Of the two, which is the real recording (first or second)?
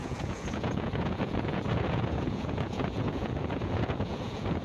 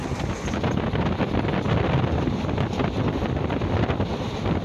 second